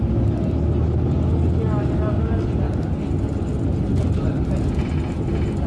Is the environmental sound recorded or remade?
recorded